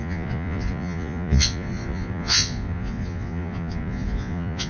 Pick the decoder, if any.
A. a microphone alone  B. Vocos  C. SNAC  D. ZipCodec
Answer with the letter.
B